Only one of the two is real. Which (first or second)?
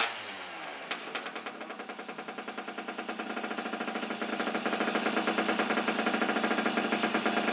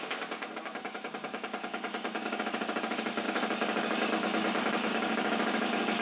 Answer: first